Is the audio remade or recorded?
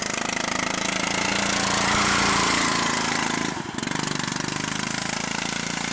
remade